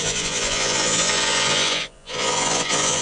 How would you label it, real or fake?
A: fake